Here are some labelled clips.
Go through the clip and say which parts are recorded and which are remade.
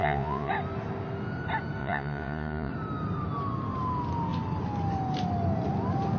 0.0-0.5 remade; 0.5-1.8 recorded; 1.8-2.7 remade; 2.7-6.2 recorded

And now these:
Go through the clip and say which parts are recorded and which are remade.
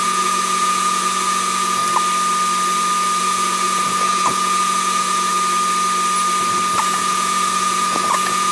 0.0-1.8 remade; 1.8-3.2 recorded; 3.2-5.3 remade; 5.3-6.8 recorded; 6.8-8.5 remade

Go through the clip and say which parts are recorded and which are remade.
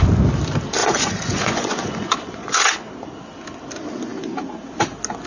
0.0-0.8 recorded; 0.8-2.7 remade; 2.7-5.3 recorded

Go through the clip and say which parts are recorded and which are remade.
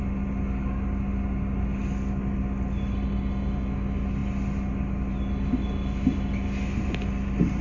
0.0-7.6 recorded